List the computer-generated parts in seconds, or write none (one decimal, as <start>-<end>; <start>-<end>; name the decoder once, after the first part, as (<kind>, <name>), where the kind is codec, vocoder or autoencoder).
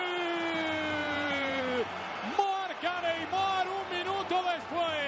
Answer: 1.0-1.6 (vocoder, Vocos)